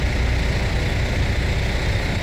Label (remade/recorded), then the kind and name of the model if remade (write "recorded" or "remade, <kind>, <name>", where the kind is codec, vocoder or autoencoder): recorded